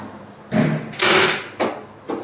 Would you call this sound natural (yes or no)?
yes